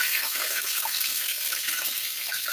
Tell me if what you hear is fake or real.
fake